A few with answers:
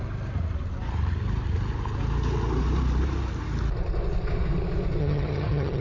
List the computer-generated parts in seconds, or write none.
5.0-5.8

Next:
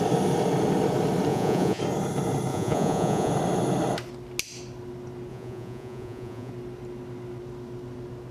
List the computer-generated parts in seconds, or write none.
1.3-1.8; 2.5-3.3; 5.3-6.5

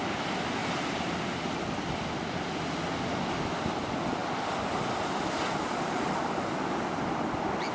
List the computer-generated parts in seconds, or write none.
none

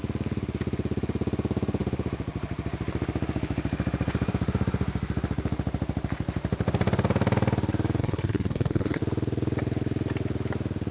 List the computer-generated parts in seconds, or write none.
8.0-9.0

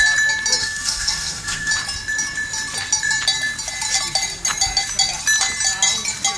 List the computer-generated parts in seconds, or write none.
0.6-1.7

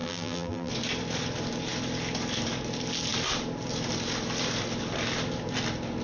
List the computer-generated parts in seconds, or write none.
0.0-0.7

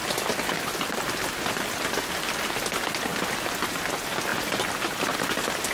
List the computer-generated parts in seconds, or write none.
4.3-5.0